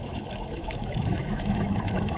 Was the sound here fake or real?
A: fake